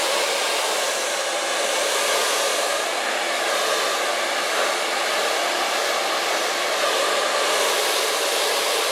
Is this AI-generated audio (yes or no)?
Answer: no